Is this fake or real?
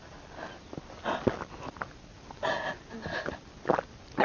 real